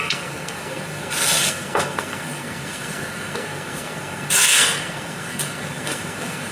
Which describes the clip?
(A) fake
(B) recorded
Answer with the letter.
A